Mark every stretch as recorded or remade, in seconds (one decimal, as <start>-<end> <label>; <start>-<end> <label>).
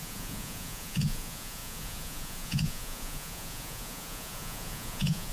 0.0-5.3 remade